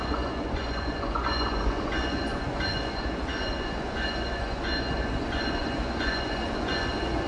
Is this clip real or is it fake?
fake